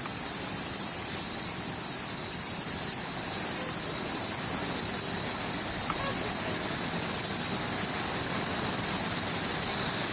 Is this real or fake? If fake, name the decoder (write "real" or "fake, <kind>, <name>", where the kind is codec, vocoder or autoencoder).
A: real